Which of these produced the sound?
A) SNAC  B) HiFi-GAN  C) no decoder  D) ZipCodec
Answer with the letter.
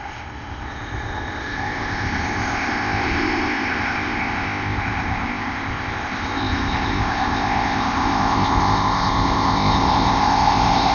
D